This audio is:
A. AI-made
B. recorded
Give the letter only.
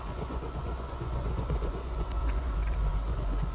A